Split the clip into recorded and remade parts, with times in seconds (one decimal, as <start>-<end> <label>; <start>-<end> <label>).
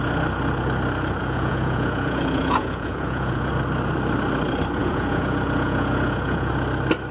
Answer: 0.0-1.2 recorded; 1.2-3.5 remade; 3.5-4.8 recorded; 4.8-6.5 remade; 6.5-7.1 recorded